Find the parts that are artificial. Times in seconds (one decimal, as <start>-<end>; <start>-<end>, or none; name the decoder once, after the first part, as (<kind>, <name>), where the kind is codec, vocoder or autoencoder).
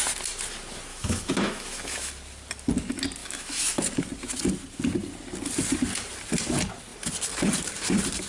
0.9-2.1 (autoencoder, DAC-VAE); 3.2-3.8